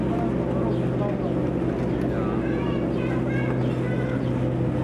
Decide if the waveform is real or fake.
real